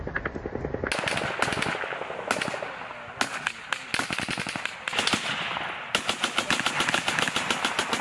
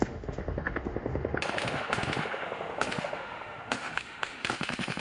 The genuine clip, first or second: first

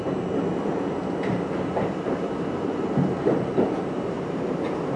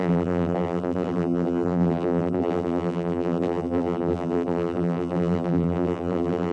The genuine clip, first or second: first